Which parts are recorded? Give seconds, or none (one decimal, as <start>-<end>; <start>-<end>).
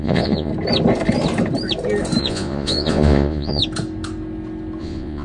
0.5-2.2; 3.6-4.8